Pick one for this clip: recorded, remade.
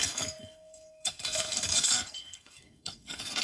remade